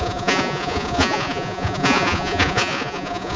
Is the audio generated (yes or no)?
yes